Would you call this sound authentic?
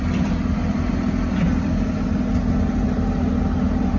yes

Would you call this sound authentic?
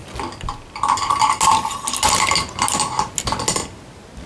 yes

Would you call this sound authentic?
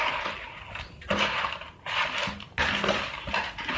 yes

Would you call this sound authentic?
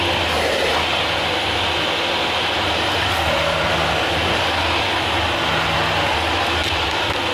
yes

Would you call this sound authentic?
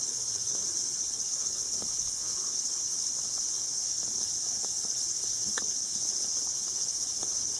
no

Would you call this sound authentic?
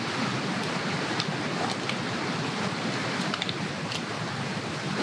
yes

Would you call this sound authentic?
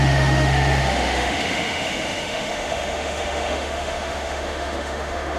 no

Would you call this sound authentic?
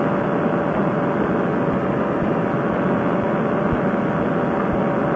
yes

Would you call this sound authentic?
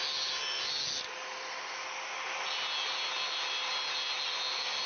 yes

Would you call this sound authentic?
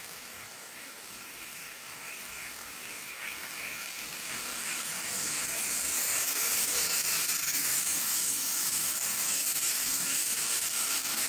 no